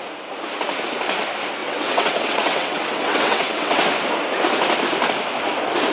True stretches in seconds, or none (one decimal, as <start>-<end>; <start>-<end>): 0.0-1.6; 3.8-5.9